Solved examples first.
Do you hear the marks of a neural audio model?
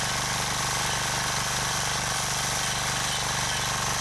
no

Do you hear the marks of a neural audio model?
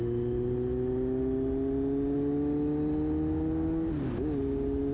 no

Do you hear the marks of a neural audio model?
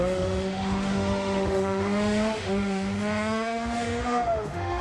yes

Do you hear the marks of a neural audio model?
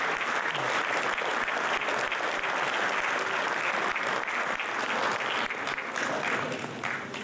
no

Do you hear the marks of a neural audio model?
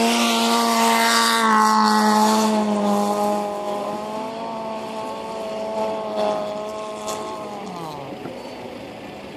no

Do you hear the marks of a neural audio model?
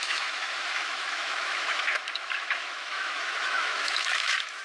yes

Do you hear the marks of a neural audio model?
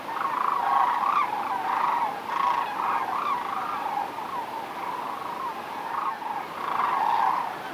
no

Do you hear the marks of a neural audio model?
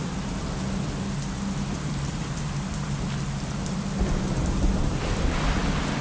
no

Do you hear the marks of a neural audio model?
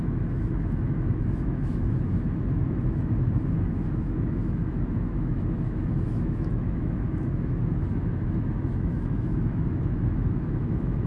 yes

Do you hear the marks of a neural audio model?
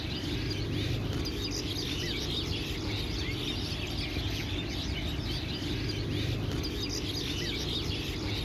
no